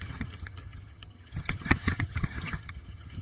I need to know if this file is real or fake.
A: fake